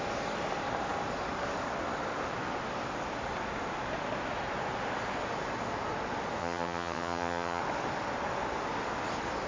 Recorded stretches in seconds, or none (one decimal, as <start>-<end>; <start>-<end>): 0.0-6.4; 7.6-9.5